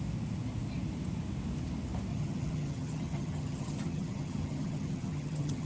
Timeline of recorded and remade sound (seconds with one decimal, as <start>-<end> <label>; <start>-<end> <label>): 0.0-2.1 recorded; 2.1-5.7 remade